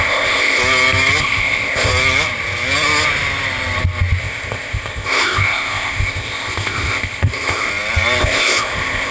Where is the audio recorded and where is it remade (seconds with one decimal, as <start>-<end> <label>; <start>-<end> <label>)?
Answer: 0.0-0.6 remade; 0.6-1.2 recorded; 1.2-1.9 remade; 1.9-4.2 recorded; 4.2-7.7 remade; 7.7-8.2 recorded; 8.2-9.1 remade